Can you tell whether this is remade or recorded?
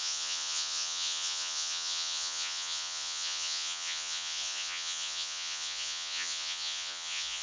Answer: remade